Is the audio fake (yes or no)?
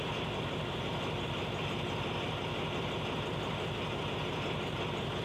no